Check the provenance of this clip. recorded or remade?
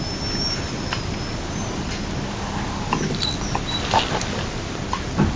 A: recorded